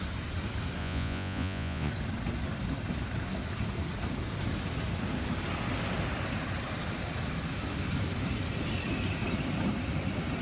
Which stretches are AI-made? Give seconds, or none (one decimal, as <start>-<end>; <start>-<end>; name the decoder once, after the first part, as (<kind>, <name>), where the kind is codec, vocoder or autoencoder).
0.8-1.9 (vocoder, Vocos)